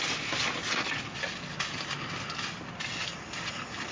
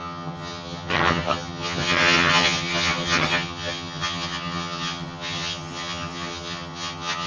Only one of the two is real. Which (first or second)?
first